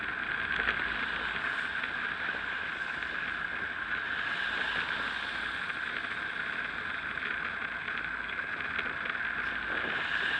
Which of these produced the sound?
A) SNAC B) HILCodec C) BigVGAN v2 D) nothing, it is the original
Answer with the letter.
D